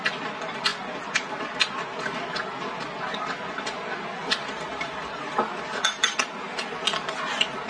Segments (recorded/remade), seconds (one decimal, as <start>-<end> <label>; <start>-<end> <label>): 0.0-4.2 recorded; 4.2-5.4 remade; 5.4-7.7 recorded